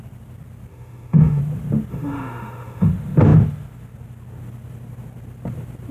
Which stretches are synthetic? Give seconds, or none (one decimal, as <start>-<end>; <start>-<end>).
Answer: 0.7-1.4; 1.9-2.9